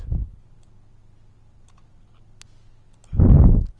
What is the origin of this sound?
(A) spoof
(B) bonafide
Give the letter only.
B